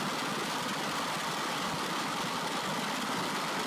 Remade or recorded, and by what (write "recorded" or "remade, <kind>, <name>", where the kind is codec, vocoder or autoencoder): recorded